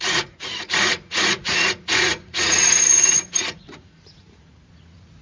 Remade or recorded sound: remade